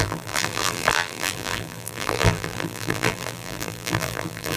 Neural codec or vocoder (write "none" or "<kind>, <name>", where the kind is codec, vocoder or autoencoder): vocoder, BigVGAN v2